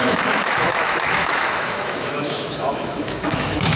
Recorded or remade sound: remade